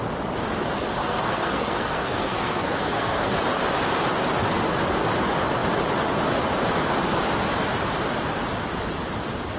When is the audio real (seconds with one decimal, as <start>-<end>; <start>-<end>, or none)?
0.0-1.0; 3.3-9.6